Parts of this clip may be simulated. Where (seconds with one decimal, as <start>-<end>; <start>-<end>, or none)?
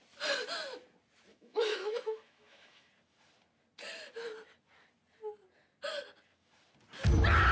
1.3-2.9